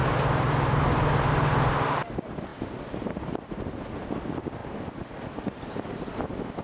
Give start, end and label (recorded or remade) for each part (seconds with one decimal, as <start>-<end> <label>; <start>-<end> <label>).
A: 0.0-6.6 recorded